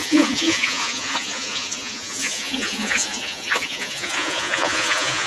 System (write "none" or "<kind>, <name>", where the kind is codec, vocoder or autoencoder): vocoder, Vocos